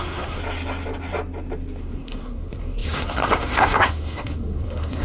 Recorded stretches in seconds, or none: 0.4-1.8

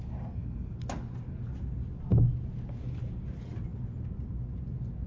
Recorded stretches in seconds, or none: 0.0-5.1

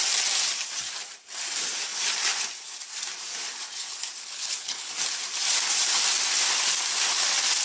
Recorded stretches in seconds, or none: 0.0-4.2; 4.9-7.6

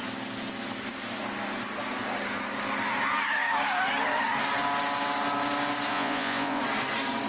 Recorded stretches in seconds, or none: 0.0-5.9; 6.6-7.3

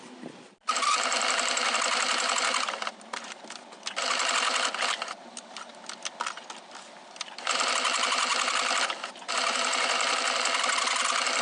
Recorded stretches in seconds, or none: 0.0-11.4

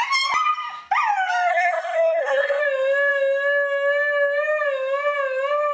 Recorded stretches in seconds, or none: 0.0-1.5; 2.6-5.7

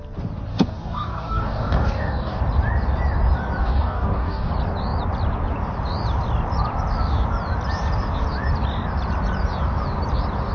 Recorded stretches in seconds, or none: 0.0-0.5; 2.4-3.6; 4.5-10.5